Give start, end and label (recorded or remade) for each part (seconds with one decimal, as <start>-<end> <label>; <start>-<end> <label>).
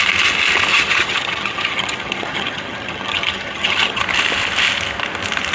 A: 0.0-0.7 recorded; 0.7-4.0 remade; 4.0-5.5 recorded